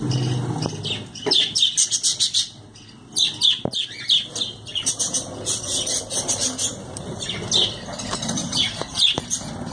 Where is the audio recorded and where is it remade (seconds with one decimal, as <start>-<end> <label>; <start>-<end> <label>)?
0.0-4.7 recorded; 4.7-7.3 remade; 7.3-8.4 recorded; 8.4-9.2 remade; 9.2-9.7 recorded